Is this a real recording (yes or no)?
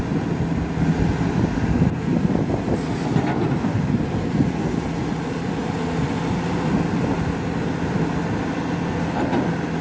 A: yes